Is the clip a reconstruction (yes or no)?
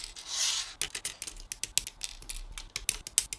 no